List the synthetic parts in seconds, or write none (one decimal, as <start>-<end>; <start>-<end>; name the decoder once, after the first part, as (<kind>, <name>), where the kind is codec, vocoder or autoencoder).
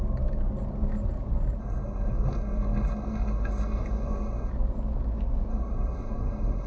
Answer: 1.6-4.5 (codec, SNAC); 5.5-6.7